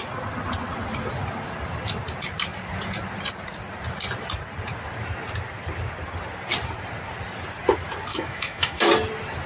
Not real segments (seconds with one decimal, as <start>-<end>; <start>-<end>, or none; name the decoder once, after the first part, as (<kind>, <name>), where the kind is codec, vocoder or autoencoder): 8.1-8.9 (autoencoder, DAC-VAE)